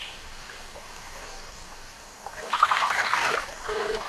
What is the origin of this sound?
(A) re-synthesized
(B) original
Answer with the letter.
A